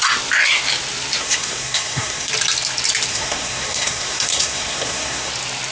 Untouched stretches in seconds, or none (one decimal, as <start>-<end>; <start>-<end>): 0.0-1.2; 2.3-3.1; 5.3-5.7

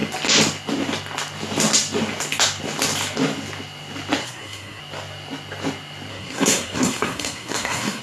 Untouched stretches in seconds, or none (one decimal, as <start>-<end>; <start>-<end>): 0.0-4.2; 4.8-6.1

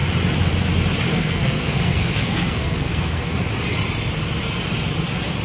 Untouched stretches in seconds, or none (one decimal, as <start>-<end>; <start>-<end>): 0.0-1.1; 3.3-5.4

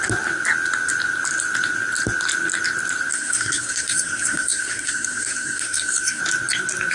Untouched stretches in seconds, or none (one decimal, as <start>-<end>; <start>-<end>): 0.0-3.1; 6.2-6.9

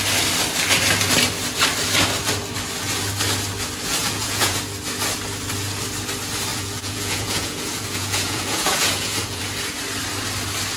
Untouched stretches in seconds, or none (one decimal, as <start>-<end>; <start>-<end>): 0.0-4.0; 4.6-6.5; 9.4-10.8

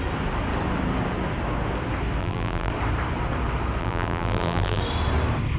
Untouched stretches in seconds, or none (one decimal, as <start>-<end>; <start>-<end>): 0.0-2.2; 2.7-3.8; 4.8-5.6